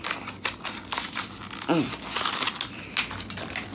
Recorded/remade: recorded